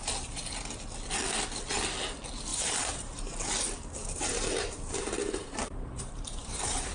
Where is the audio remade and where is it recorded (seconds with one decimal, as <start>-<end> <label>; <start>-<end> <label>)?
0.0-2.5 recorded; 2.5-6.0 remade; 6.0-6.4 recorded; 6.4-6.9 remade